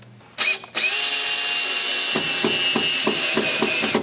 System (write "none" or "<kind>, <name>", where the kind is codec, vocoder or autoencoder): none